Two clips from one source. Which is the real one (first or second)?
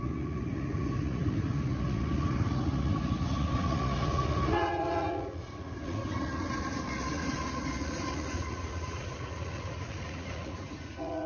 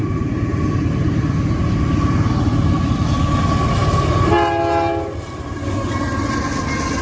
second